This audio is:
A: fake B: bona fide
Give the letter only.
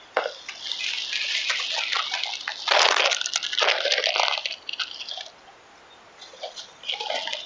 B